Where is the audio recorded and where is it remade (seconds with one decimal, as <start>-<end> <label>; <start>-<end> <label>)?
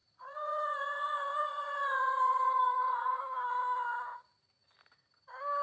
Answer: 0.0-3.2 remade; 3.2-5.6 recorded